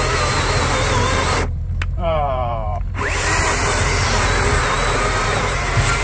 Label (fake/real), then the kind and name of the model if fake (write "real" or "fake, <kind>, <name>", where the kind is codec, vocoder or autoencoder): fake, vocoder, BigVGAN v2